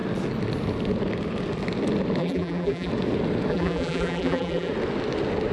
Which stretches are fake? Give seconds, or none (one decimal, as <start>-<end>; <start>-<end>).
2.2-2.9; 3.5-4.7